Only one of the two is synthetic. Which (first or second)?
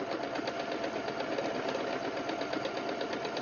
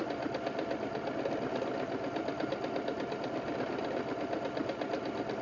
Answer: second